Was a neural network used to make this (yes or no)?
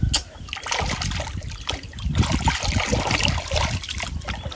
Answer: no